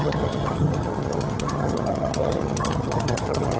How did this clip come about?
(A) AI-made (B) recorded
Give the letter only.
A